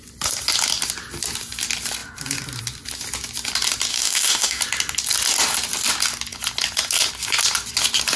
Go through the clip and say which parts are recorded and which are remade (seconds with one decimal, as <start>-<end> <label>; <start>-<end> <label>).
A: 0.0-3.9 recorded; 3.9-4.6 remade; 4.6-8.2 recorded